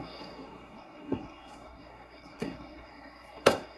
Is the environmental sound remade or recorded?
remade